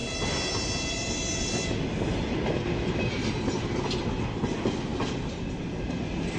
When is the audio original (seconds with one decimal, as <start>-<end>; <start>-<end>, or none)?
0.0-6.4